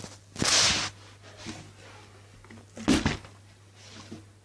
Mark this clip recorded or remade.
recorded